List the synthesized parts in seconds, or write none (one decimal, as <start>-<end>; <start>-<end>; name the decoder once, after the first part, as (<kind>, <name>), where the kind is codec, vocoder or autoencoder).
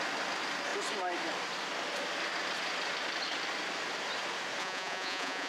4.6-5.5 (vocoder, Vocos)